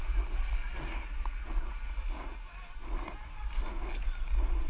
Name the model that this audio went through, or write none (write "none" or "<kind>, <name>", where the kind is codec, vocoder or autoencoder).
none